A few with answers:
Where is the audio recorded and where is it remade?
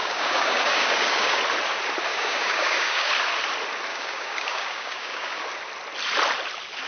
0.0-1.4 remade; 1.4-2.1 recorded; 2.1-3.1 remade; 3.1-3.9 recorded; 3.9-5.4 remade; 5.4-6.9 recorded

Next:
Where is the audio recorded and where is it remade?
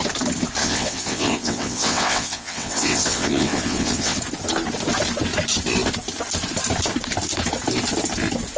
0.0-0.6 recorded; 0.6-4.2 remade; 4.2-8.6 recorded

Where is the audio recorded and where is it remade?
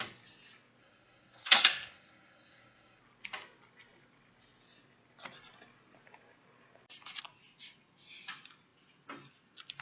0.0-0.8 recorded; 0.8-3.0 remade; 3.0-9.8 recorded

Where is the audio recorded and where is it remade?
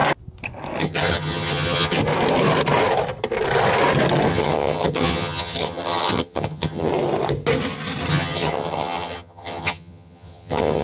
0.0-0.8 recorded; 0.8-2.0 remade; 2.0-4.3 recorded; 4.3-6.9 remade; 6.9-8.1 recorded; 8.1-10.8 remade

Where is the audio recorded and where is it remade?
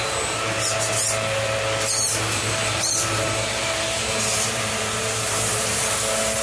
0.0-2.1 recorded; 2.1-5.9 remade; 5.9-6.4 recorded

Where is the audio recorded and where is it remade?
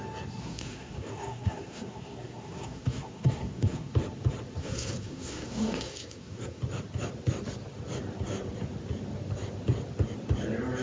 0.0-0.4 recorded; 0.4-3.9 remade; 3.9-4.6 recorded; 4.6-6.6 remade; 6.6-10.8 recorded